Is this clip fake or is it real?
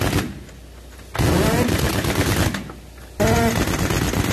real